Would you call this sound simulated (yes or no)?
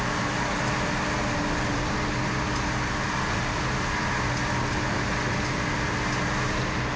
no